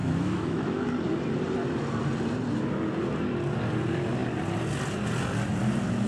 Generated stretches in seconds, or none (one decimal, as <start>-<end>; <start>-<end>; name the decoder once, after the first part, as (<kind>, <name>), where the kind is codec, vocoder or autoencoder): 0.0-0.9 (autoencoder, DAC-VAE)